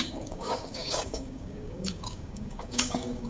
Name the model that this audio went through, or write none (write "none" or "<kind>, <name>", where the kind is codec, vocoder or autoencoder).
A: codec, DAC